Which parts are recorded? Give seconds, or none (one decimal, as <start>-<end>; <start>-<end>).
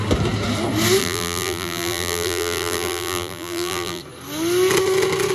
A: 0.0-1.0; 4.0-5.3